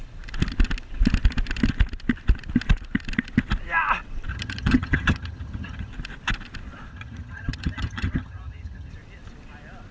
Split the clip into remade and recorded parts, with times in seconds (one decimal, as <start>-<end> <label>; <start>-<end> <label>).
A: 0.0-4.3 recorded; 4.3-5.9 remade; 5.9-6.9 recorded; 6.9-8.9 remade; 8.9-9.9 recorded